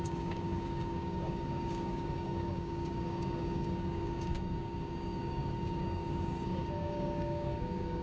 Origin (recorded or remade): remade